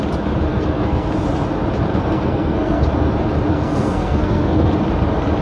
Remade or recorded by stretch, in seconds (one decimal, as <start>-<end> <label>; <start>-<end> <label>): 0.0-0.5 recorded; 0.5-1.1 remade; 1.1-1.9 recorded; 1.9-2.8 remade; 2.8-3.5 recorded; 3.5-4.7 remade; 4.7-5.4 recorded